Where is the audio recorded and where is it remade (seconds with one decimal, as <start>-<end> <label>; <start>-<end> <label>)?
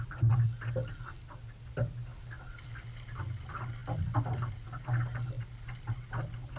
0.0-6.6 recorded